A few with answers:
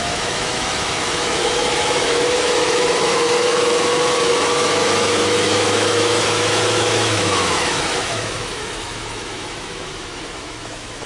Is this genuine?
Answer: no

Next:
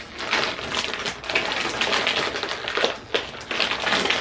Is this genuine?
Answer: yes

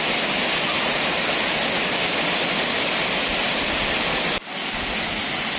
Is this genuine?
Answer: yes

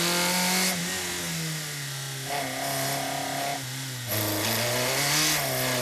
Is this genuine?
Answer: yes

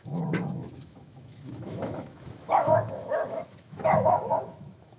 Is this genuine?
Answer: no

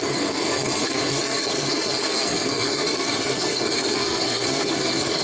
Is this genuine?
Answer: no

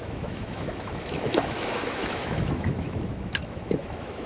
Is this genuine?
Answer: no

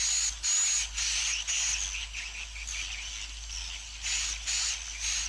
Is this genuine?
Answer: yes